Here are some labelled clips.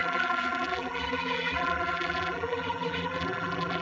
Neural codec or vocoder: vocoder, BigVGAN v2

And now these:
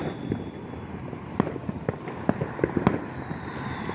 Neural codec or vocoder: none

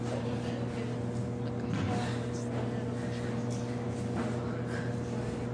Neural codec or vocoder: none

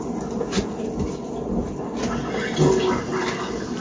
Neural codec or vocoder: none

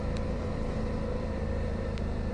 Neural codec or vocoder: vocoder, BigVGAN v2